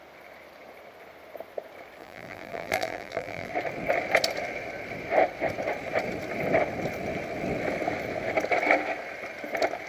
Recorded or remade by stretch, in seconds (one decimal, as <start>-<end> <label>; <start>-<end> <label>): 0.0-2.0 recorded; 2.0-3.5 remade; 3.5-9.9 recorded